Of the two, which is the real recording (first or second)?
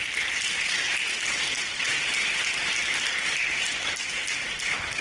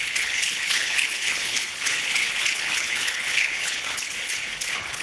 first